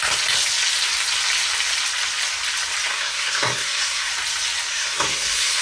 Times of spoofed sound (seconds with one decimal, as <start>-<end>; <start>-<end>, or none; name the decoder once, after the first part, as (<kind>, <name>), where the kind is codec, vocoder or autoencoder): 2.9-4.1 (codec, SNAC); 4.7-5.6